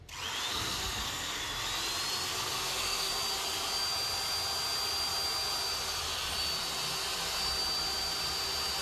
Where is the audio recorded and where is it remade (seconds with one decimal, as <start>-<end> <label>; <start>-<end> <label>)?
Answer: 0.0-0.5 recorded; 0.5-1.4 remade; 1.4-2.3 recorded; 2.3-3.1 remade; 3.1-8.8 recorded